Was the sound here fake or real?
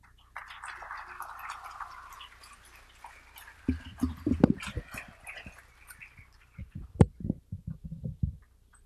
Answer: real